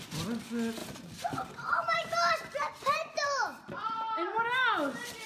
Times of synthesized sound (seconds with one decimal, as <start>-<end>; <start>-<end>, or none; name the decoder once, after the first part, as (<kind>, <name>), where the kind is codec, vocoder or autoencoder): 0.8-4.0 (vocoder, BigVGAN v2)